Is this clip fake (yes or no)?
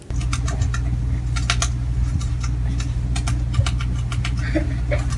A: no